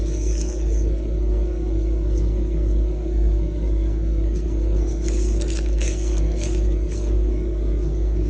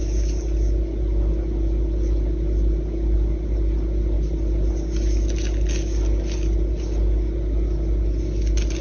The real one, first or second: second